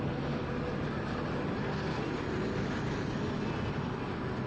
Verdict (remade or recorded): recorded